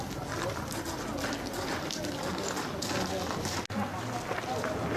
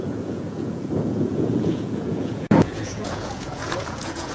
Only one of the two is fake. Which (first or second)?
second